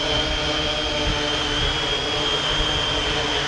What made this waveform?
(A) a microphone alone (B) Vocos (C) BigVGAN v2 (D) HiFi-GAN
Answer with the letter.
A